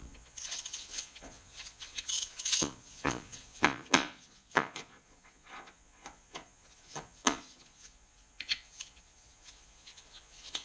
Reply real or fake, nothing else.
fake